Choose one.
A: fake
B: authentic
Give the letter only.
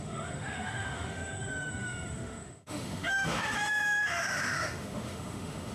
A